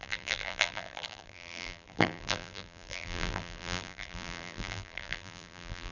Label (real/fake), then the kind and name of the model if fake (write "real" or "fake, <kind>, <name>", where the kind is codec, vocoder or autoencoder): fake, vocoder, BigVGAN v2